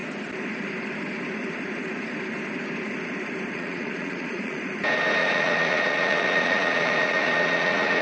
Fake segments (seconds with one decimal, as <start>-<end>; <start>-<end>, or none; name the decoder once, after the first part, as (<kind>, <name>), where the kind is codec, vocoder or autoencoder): 3.5-4.6 (vocoder, Vocos); 5.2-8.0